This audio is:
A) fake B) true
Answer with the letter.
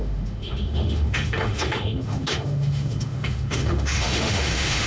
A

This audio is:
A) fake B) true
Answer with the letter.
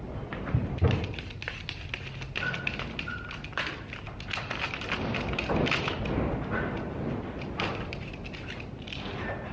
B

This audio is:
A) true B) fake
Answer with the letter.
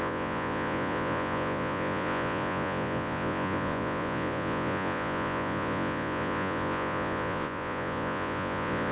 B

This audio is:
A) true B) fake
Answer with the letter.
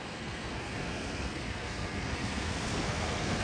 B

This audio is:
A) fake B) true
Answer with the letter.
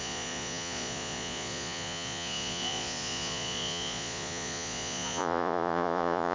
A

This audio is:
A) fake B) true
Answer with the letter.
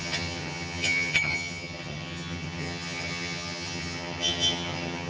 A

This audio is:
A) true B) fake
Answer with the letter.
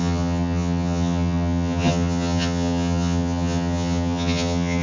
B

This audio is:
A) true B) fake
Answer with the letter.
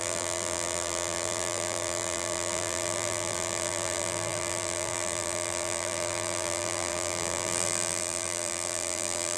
B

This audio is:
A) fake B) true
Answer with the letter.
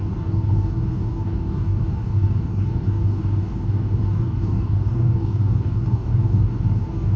A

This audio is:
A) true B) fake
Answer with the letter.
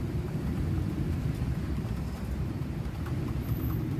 B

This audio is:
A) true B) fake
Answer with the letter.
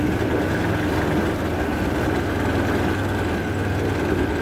A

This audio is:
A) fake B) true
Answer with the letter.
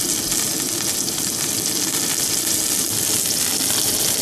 B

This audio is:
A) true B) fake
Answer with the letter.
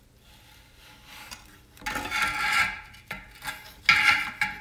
A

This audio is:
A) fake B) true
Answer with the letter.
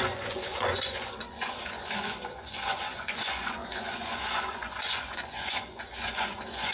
A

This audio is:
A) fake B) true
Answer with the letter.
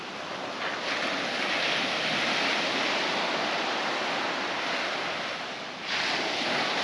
B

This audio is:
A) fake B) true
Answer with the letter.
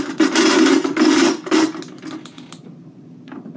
B